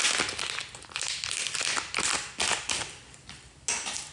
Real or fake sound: real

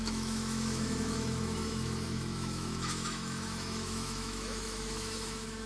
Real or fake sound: fake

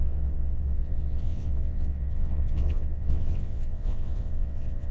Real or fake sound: fake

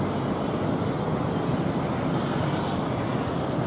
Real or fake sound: real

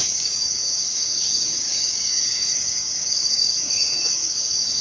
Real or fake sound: fake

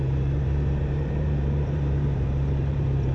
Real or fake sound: fake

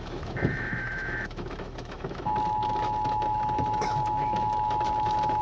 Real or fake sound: fake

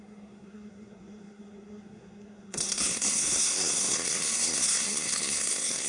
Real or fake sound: fake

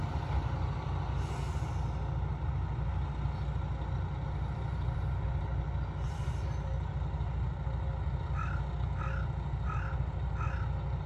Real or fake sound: real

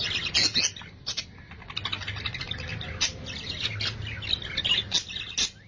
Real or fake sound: real